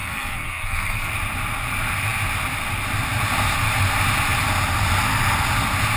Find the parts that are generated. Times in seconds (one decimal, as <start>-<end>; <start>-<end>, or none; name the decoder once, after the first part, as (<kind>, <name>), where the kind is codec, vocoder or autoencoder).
0.0-1.1 (codec, SNAC)